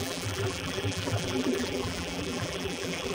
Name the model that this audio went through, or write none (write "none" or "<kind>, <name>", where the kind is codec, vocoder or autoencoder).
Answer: vocoder, BigVGAN v2